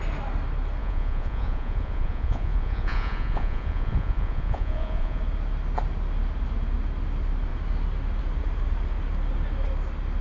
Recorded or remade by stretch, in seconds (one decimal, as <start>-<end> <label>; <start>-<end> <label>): 0.0-0.8 recorded; 0.8-5.2 remade; 5.2-10.2 recorded